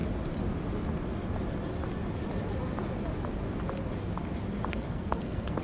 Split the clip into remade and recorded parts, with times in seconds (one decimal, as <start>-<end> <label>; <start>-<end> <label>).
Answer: 0.0-4.7 recorded; 4.7-5.6 remade